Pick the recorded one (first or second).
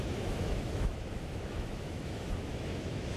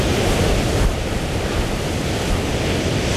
second